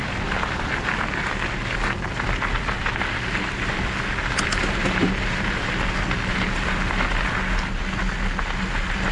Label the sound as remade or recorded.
recorded